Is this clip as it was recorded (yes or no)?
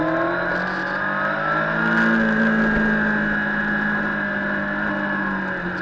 yes